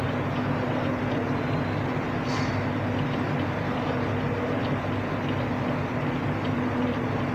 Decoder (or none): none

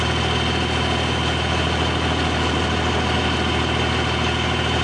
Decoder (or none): none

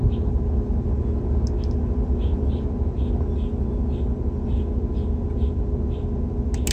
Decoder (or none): none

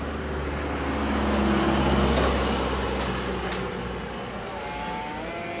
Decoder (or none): none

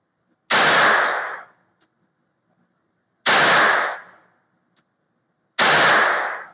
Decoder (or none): none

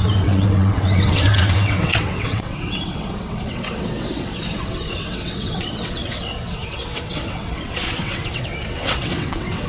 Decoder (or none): vocoder, WaveNeXt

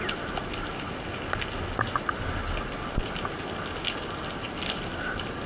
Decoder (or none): none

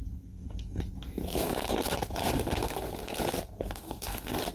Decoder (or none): codec, SNAC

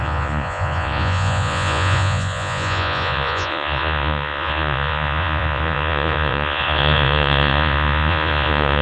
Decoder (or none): vocoder, Vocos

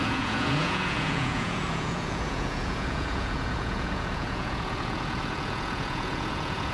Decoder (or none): vocoder, Vocos